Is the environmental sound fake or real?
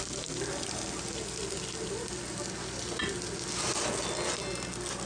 real